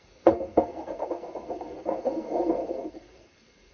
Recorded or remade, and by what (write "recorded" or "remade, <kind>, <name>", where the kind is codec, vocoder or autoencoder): remade, codec, SNAC